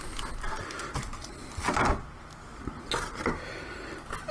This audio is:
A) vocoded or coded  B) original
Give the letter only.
B